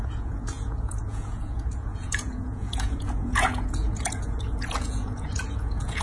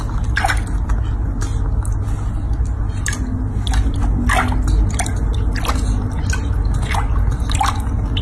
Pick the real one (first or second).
second